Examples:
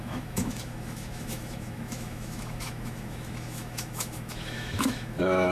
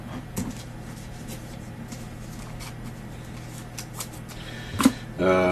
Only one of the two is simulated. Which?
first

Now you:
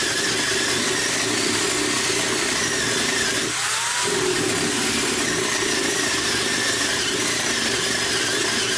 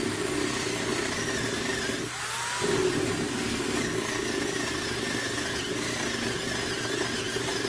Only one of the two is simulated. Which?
first